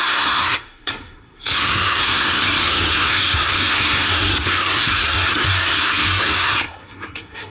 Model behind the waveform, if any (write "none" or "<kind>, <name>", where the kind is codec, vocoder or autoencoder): codec, SNAC